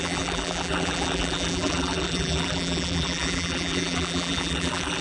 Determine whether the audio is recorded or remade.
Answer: remade